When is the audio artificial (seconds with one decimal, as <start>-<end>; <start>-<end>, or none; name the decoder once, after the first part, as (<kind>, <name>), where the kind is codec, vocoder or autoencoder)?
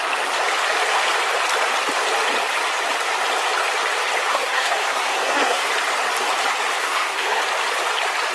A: 4.3-5.7 (codec, SNAC); 6.8-7.4